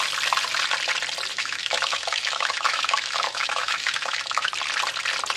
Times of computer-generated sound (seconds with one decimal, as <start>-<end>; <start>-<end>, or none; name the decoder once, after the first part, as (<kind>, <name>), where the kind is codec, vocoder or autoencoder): 1.3-4.5 (autoencoder, DAC-VAE)